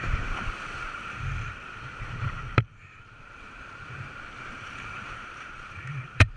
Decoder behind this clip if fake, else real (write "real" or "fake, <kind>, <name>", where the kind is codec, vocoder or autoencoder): fake, vocoder, BigVGAN v2